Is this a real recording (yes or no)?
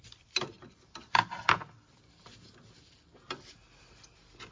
yes